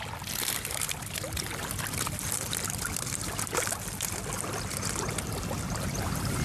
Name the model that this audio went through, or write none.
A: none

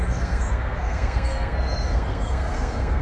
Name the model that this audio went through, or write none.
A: codec, SNAC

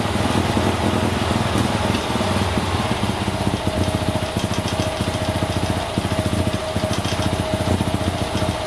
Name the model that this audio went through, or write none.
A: none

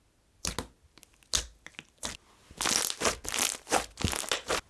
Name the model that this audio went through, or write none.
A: none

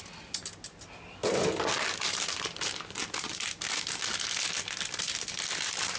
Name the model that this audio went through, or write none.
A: none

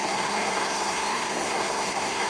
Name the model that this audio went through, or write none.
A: codec, SNAC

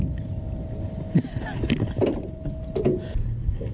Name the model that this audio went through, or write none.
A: none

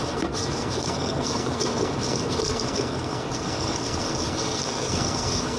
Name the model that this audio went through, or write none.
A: codec, SNAC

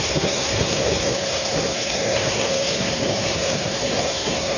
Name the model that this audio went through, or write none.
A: codec, SNAC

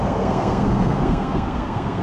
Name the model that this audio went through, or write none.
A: codec, SNAC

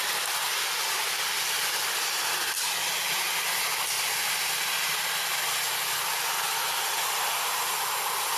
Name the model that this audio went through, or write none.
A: none